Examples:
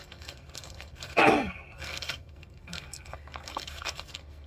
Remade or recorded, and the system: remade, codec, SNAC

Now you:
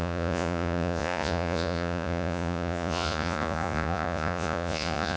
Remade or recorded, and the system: remade, vocoder, Vocos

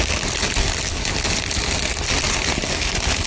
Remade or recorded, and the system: recorded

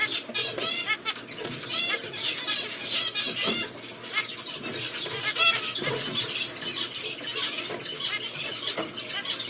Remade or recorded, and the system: recorded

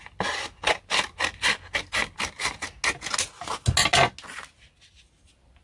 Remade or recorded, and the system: recorded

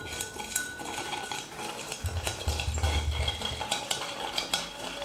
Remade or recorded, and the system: recorded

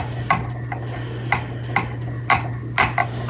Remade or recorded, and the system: recorded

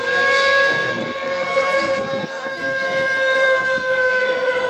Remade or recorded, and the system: remade, codec, SNAC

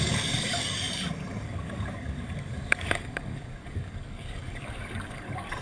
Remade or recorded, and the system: remade, codec, DAC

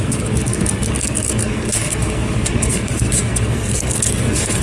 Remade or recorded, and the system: remade, codec, SNAC